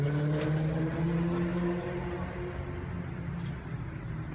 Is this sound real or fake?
real